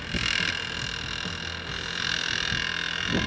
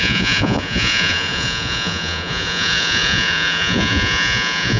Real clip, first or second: first